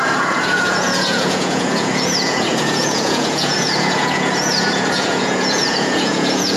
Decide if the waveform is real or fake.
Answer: fake